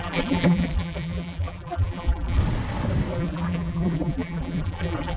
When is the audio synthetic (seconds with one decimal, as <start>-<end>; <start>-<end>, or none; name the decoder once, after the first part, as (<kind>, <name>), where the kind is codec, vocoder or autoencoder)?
0.0-2.4 (vocoder, BigVGAN v2); 3.1-5.2